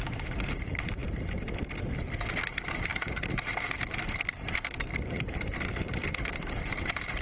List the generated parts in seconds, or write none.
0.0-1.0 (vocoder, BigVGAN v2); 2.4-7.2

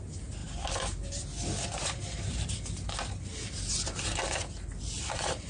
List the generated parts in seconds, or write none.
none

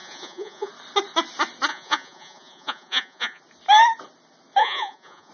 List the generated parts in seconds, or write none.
0.0-0.7 (vocoder, Vocos); 1.7-3.4; 4.6-5.3

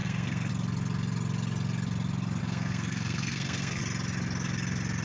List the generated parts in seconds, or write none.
0.0-0.5 (codec, SNAC); 2.4-3.8

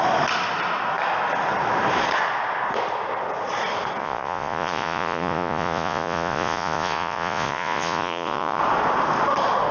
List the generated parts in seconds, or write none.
4.0-8.6 (vocoder, Vocos)

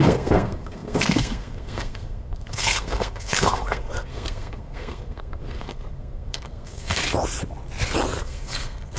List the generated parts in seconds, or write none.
0.0-7.0 (codec, SNAC); 8.2-9.0

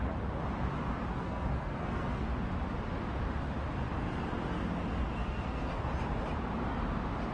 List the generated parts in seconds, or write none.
1.1-2.2 (codec, SNAC); 5.2-5.8

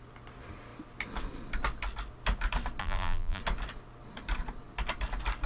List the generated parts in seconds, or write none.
2.8-3.4 (vocoder, BigVGAN v2)